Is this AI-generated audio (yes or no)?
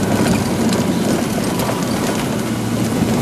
no